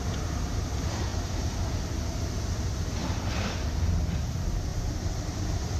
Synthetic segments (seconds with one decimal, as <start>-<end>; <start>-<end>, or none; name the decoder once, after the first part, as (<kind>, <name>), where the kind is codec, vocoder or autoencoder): 4.7-5.8 (vocoder, BigVGAN v2)